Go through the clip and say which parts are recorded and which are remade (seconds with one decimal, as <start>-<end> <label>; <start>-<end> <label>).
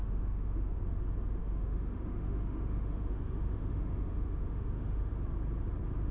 0.0-0.8 remade; 0.8-1.4 recorded; 1.4-5.1 remade; 5.1-6.1 recorded